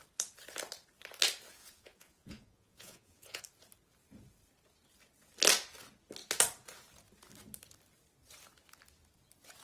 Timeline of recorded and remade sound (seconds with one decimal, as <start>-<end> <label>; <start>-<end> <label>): 0.0-1.6 recorded; 1.6-3.4 remade; 3.4-9.6 recorded